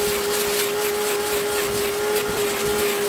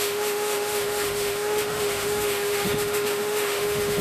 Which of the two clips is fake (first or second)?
second